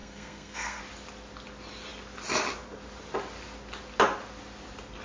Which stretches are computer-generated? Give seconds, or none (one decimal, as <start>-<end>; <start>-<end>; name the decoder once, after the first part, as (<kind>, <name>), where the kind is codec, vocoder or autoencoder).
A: 0.0-0.8 (codec, SNAC)